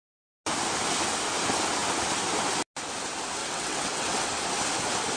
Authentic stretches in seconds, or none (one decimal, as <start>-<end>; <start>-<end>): 0.0-3.4; 4.3-5.2